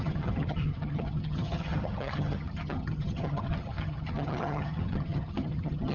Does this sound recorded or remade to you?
remade